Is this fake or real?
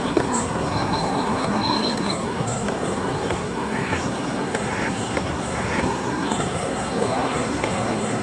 fake